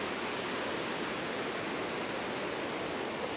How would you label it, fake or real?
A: real